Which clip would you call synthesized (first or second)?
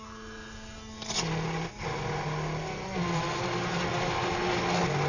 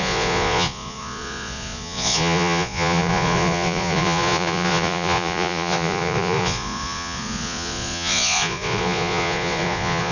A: second